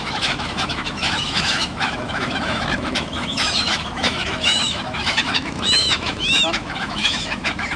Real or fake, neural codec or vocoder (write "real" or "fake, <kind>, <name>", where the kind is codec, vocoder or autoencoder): fake, autoencoder, DAC-VAE